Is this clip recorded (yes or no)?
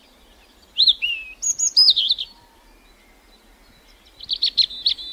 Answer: yes